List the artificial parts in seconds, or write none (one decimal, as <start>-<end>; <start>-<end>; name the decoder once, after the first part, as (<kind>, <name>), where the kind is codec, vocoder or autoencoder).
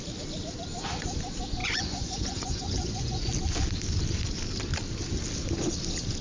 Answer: 1.6-3.3 (vocoder, Vocos)